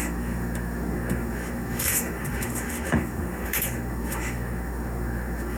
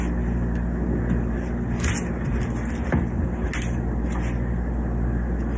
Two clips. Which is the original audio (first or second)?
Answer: second